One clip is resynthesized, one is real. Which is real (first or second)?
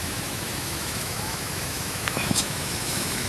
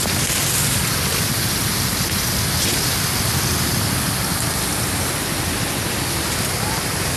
second